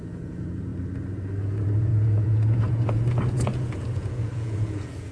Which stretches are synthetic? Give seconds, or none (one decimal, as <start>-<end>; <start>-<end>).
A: 0.0-0.7; 1.4-5.1